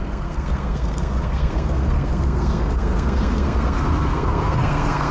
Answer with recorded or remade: remade